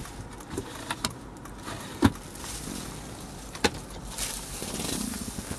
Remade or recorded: recorded